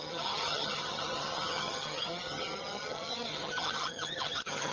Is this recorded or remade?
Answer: remade